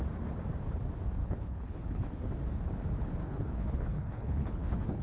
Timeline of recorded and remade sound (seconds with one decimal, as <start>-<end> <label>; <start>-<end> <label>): 0.0-1.2 recorded; 1.2-2.1 remade; 2.1-3.2 recorded; 3.2-5.0 remade